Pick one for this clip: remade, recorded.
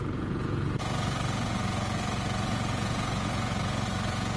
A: remade